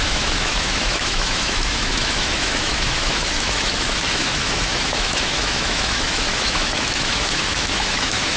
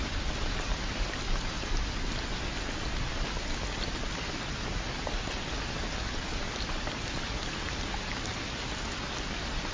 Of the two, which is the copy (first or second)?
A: first